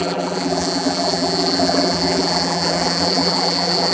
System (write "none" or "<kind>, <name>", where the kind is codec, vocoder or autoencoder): vocoder, BigVGAN v2